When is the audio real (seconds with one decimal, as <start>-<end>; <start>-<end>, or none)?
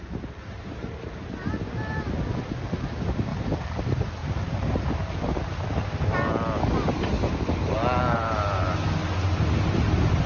0.0-4.2; 4.8-10.3